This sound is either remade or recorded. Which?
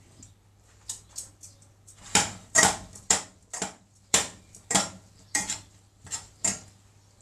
remade